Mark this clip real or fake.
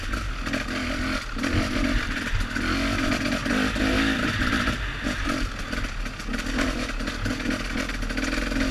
real